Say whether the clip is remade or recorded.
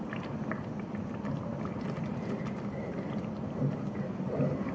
recorded